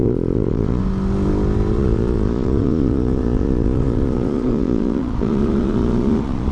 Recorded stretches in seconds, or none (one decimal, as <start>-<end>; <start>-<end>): 0.8-1.7